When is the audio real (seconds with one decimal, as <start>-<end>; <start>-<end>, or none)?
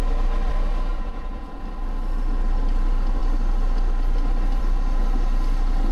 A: 0.0-0.9; 1.6-5.9